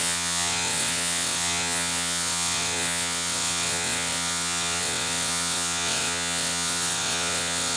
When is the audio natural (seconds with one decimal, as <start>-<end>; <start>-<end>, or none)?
none